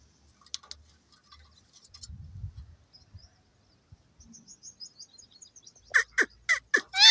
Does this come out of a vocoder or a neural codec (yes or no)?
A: no